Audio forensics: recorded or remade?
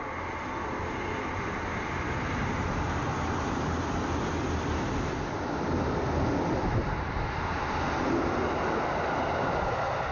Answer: recorded